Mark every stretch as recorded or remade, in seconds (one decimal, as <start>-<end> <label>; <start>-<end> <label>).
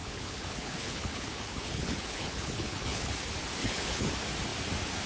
0.0-3.1 remade; 3.1-3.6 recorded; 3.6-4.1 remade; 4.1-5.1 recorded